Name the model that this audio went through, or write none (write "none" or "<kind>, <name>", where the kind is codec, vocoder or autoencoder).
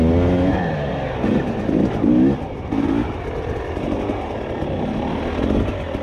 none